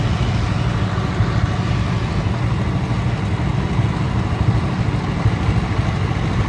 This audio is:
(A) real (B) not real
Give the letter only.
A